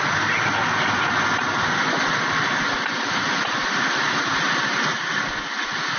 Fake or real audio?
real